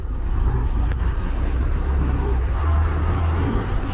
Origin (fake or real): fake